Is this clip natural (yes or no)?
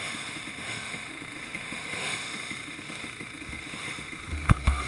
no